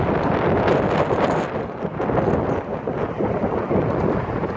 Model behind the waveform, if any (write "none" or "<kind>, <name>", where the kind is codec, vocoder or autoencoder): none